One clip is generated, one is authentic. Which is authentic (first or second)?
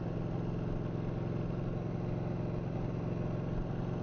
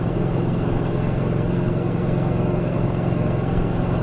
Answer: first